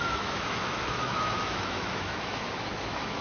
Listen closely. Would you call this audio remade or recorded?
remade